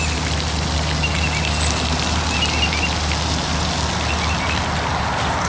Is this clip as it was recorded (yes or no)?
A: yes